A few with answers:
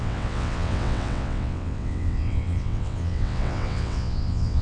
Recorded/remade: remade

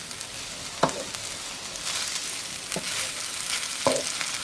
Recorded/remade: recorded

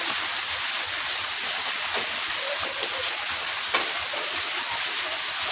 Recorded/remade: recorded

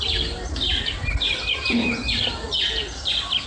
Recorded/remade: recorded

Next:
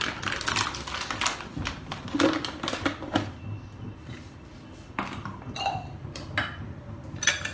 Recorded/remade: recorded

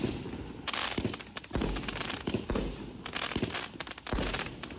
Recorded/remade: recorded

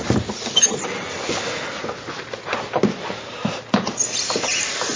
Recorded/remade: recorded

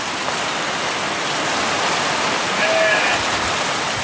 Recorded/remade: recorded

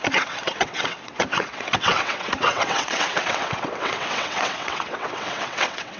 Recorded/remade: remade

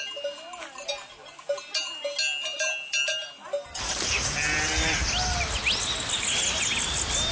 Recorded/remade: recorded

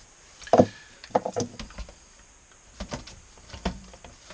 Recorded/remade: recorded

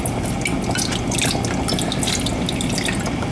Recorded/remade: recorded